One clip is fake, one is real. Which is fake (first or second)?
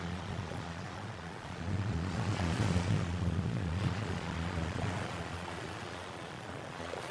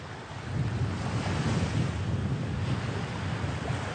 first